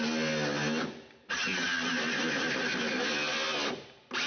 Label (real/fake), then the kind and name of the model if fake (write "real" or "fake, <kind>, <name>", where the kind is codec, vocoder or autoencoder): real